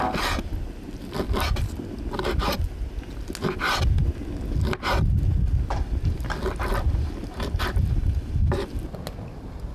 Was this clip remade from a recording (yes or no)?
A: no